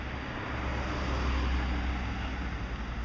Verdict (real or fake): real